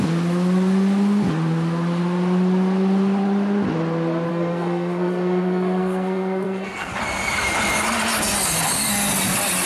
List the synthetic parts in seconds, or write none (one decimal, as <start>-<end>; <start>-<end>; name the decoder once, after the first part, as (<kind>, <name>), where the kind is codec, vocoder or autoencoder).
4.3-6.9 (codec, SNAC)